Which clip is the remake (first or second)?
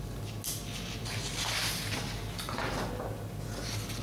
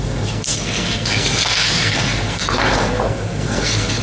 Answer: second